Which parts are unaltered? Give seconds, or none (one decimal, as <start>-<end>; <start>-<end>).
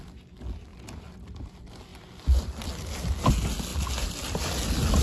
0.0-5.0